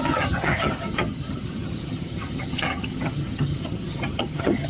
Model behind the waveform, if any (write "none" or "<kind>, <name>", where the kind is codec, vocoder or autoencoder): vocoder, HiFi-GAN